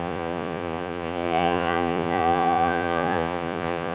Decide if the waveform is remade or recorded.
remade